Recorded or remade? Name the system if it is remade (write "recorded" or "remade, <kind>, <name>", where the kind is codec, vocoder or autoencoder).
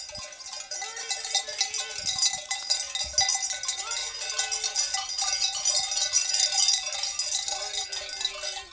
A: recorded